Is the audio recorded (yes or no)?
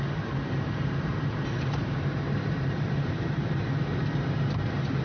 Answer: no